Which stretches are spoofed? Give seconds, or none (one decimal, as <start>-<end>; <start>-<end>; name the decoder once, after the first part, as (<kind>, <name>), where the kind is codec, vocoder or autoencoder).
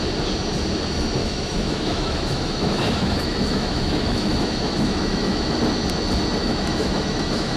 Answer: 1.2-5.6 (autoencoder, DAC-VAE); 6.4-7.6